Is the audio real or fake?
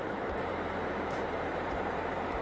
fake